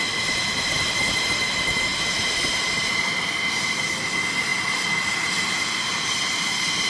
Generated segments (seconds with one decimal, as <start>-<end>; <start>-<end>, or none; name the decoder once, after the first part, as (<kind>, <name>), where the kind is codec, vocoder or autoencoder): none

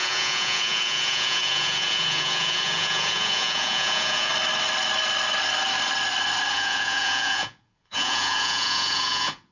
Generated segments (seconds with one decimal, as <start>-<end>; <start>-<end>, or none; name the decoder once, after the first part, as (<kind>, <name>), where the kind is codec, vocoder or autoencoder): 0.0-4.3 (vocoder, Vocos); 6.5-9.5